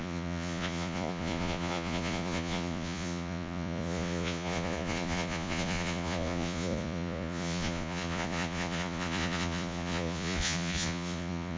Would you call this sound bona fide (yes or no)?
no